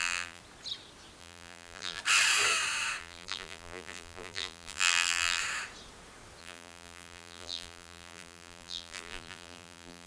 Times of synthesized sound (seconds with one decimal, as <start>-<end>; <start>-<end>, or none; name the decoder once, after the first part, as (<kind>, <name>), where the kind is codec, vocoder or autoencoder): 0.0-0.4 (vocoder, BigVGAN v2); 1.2-2.0; 3.0-5.4; 6.4-10.1